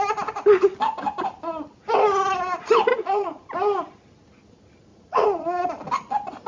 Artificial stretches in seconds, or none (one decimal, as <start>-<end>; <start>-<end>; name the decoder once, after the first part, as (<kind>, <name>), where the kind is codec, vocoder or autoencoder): 2.9-3.5 (vocoder, Vocos); 4.9-5.7